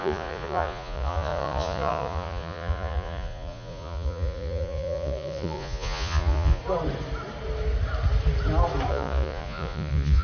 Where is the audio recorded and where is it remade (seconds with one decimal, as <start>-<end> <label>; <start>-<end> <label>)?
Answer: 0.0-6.6 remade; 6.6-8.9 recorded; 8.9-10.2 remade